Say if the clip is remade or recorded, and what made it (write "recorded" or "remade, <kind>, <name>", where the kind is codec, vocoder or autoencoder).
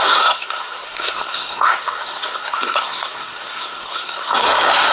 remade, codec, SNAC